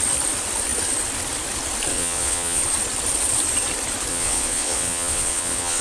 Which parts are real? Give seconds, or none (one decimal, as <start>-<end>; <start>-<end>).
0.0-1.9; 2.6-4.1